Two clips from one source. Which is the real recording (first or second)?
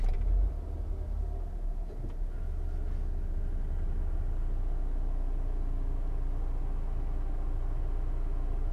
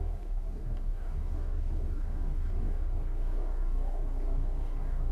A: first